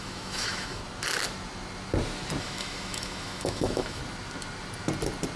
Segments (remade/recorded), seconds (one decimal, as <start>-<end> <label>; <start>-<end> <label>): 0.0-0.8 remade; 0.8-2.4 recorded; 2.4-4.0 remade; 4.0-5.4 recorded